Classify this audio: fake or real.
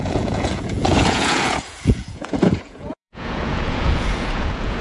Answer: fake